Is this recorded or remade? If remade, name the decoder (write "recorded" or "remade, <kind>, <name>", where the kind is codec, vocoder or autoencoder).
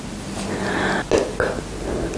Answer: recorded